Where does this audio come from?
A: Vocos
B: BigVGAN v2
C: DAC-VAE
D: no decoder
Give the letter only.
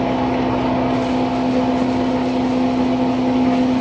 D